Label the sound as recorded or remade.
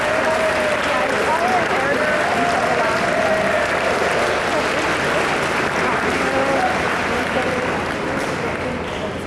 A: recorded